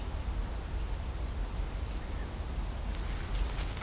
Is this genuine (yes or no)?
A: yes